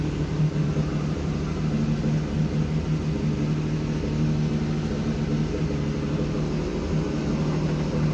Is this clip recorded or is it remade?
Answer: recorded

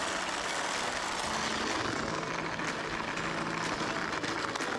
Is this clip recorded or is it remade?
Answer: recorded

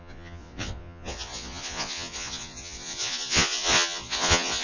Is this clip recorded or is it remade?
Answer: remade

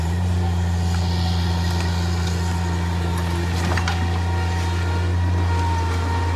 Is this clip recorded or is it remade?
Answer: recorded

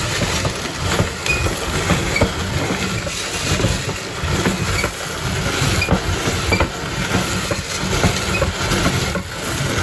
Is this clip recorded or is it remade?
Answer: recorded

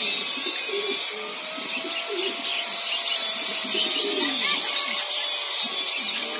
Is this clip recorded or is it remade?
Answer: remade